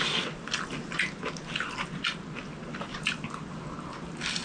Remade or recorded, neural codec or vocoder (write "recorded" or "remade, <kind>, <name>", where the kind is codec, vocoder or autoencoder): recorded